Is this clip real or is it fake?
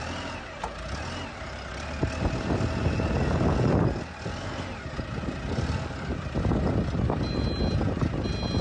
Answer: real